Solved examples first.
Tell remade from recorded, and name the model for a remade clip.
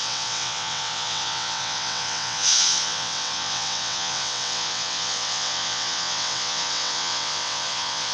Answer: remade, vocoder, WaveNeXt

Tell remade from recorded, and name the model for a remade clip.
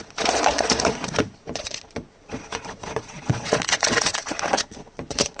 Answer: remade, vocoder, Vocos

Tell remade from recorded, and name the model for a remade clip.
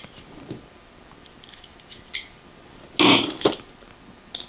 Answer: recorded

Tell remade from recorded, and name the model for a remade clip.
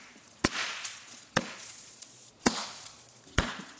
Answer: remade, vocoder, Vocos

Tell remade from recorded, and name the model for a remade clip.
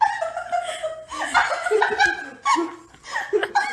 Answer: recorded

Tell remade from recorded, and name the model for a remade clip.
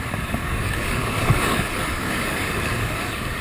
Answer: remade, codec, DAC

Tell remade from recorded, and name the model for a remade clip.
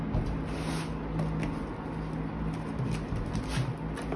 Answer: recorded